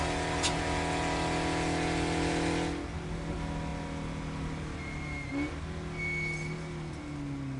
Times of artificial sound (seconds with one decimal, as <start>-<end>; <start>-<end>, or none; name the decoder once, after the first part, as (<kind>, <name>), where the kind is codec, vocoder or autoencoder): none